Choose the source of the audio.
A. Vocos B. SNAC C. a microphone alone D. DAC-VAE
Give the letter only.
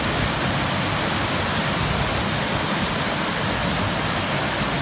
C